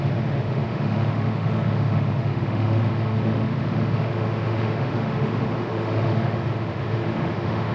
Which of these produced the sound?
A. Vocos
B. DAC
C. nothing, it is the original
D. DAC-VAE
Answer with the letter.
D